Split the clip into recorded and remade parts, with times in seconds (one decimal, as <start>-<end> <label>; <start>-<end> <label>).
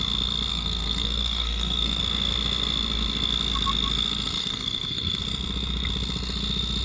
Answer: 0.0-0.5 recorded; 0.5-2.0 remade; 2.0-4.4 recorded; 4.4-5.2 remade; 5.2-6.8 recorded